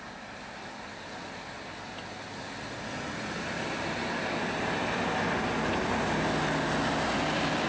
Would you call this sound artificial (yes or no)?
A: no